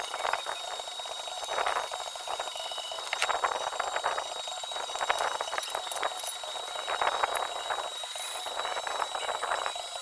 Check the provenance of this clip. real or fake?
real